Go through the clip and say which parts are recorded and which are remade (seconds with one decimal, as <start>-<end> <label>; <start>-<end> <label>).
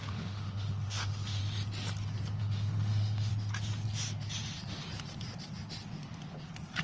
0.0-1.4 remade; 1.4-2.4 recorded; 2.4-3.3 remade; 3.3-6.8 recorded